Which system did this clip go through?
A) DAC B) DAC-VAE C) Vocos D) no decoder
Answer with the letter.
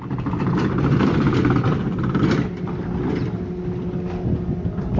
D